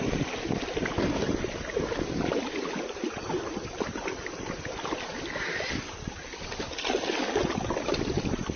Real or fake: real